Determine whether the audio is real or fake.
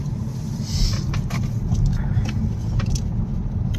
real